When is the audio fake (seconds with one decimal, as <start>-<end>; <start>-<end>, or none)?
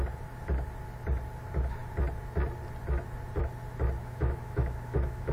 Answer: 4.0-5.3